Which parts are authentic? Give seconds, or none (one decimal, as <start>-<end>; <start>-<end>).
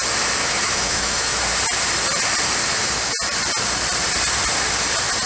0.0-0.4; 1.4-5.3